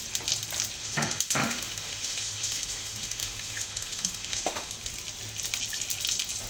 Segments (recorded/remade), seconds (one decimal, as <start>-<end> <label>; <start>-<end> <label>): 0.0-0.8 recorded; 0.8-4.7 remade; 4.7-6.5 recorded